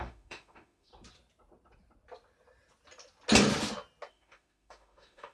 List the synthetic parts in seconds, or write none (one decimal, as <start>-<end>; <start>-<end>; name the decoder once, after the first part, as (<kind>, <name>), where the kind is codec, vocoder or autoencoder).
0.0-0.9 (autoencoder, DAC-VAE); 4.1-5.3

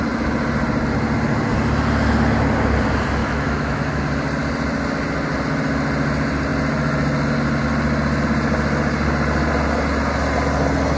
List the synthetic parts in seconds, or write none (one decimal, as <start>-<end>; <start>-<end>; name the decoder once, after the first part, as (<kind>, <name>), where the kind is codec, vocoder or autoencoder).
3.2-4.0 (autoencoder, DAC-VAE)

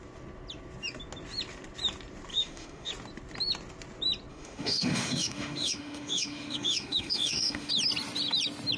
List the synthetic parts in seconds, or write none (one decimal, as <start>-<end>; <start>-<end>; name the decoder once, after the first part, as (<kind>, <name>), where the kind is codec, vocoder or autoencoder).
2.3-2.9 (autoencoder, DAC-VAE); 4.3-7.7

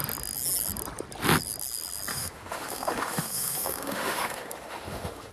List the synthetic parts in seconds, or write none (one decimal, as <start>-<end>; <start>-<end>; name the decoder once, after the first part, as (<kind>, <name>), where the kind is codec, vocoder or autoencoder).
2.1-5.3 (autoencoder, DAC-VAE)